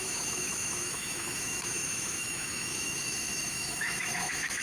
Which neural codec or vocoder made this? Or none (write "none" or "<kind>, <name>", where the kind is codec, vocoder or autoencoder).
autoencoder, DAC-VAE